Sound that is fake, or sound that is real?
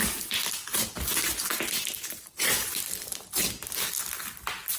real